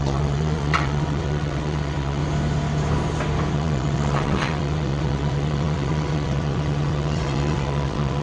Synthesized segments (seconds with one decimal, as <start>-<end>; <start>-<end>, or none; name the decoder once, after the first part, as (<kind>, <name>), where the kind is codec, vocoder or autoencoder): 0.0-2.2 (vocoder, WaveNeXt); 3.5-8.2